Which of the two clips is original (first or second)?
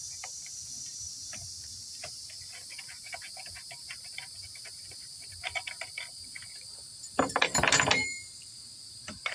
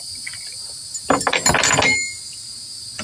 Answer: second